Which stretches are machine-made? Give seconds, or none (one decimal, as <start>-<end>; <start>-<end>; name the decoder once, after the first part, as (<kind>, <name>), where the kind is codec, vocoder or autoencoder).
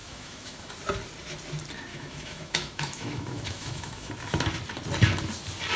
0.0-0.7 (autoencoder, DAC-VAE); 1.9-4.1